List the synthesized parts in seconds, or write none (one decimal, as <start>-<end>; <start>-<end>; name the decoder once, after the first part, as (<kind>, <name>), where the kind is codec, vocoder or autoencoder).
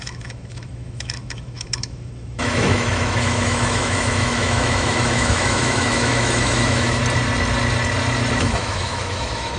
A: 0.0-7.0 (autoencoder, DAC-VAE); 8.4-9.6